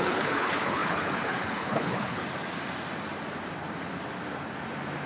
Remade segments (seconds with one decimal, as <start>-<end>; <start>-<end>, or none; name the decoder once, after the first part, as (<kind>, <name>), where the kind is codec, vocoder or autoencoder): 0.0-2.2 (codec, HILCodec)